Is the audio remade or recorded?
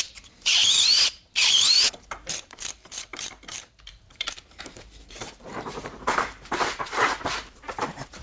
remade